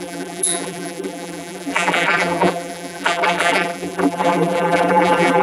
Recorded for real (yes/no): no